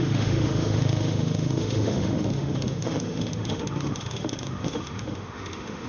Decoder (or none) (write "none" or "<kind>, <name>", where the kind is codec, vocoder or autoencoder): autoencoder, DAC-VAE